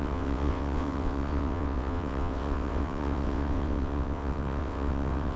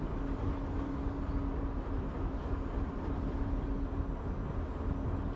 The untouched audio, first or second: second